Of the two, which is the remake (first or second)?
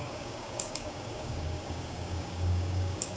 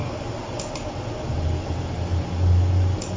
first